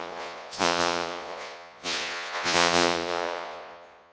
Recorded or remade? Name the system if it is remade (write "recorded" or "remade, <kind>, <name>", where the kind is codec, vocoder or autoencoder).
remade, vocoder, Vocos